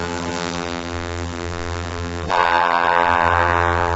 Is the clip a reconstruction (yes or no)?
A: yes